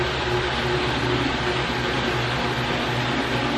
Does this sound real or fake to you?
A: real